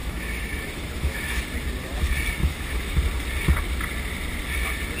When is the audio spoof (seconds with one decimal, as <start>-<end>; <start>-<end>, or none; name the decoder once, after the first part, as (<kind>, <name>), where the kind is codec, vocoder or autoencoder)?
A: 0.0-1.4 (autoencoder, DAC-VAE); 2.4-3.0